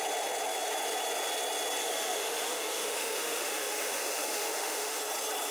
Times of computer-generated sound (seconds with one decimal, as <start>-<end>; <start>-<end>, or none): 1.8-5.0